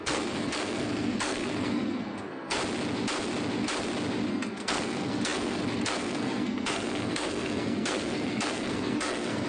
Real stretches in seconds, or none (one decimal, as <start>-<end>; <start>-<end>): 2.6-4.3